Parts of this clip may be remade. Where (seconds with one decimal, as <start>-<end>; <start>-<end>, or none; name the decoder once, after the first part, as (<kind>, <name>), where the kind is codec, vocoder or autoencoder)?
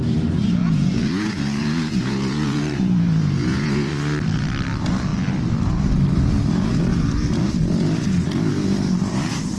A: 0.6-3.9 (vocoder, Vocos)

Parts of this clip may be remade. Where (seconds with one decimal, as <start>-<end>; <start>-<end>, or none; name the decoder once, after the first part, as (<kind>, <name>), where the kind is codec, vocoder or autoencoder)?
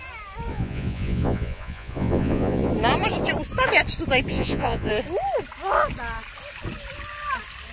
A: 0.5-2.7 (vocoder, Vocos); 4.3-4.9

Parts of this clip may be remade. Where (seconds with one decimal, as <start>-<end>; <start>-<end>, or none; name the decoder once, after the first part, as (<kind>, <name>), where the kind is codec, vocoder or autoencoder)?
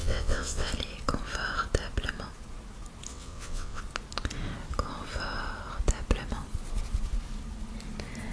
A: 0.0-0.7 (vocoder, WaveNeXt); 3.1-3.8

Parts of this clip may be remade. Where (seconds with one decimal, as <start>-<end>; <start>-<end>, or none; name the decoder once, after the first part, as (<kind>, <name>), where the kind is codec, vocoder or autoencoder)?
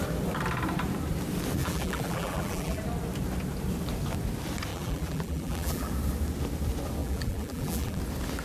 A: 1.6-2.8 (vocoder, BigVGAN v2); 4.7-5.9; 7.0-8.0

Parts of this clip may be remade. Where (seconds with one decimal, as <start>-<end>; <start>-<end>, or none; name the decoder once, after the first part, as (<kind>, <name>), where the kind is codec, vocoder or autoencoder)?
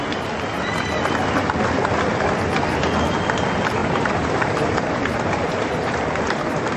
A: 3.8-6.8 (vocoder, BigVGAN v2)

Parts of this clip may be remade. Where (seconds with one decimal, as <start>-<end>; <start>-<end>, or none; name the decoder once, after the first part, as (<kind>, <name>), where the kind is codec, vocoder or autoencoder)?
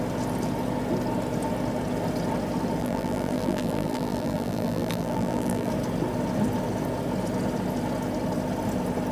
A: 2.8-5.7 (vocoder, BigVGAN v2)